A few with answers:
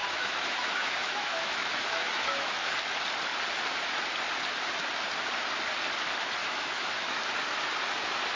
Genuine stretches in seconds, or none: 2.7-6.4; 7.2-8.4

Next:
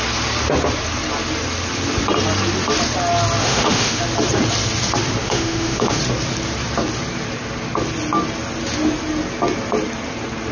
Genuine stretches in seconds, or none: 0.0-3.4; 4.0-5.2; 6.0-10.5

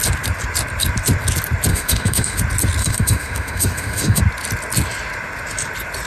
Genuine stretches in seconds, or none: 0.0-1.7; 2.4-2.8; 4.2-6.1

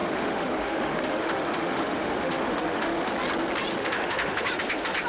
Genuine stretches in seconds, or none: 3.1-3.7; 4.5-5.1

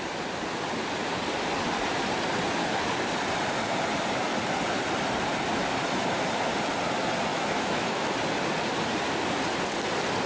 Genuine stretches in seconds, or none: 0.0-7.3; 8.1-10.3